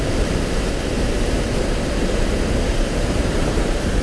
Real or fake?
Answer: fake